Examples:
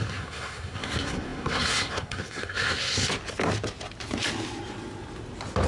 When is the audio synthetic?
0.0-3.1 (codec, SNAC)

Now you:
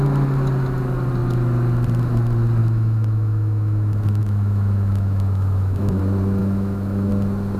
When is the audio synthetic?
2.6-6.0 (autoencoder, DAC-VAE); 6.4-7.1

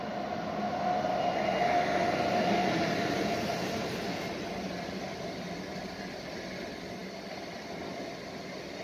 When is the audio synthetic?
2.6-5.5 (vocoder, BigVGAN v2)

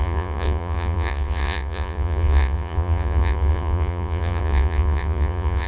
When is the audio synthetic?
0.0-5.7 (vocoder, Vocos)

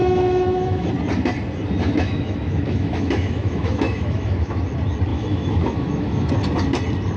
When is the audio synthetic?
0.0-0.9 (autoencoder, DAC-VAE); 1.8-4.6; 5.1-6.3

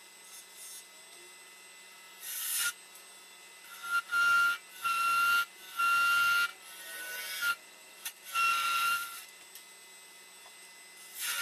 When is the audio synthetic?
6.5-9.4 (vocoder, BigVGAN v2)